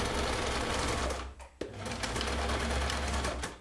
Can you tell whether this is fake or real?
real